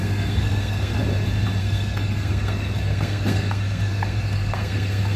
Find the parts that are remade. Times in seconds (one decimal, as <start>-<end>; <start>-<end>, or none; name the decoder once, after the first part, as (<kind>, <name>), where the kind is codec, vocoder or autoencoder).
0.0-1.0 (codec, SNAC); 1.6-5.2